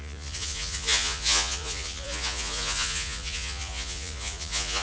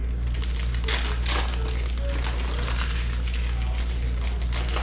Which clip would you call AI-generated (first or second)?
first